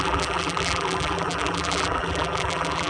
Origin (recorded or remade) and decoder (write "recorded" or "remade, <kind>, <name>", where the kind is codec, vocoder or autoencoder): remade, vocoder, BigVGAN v2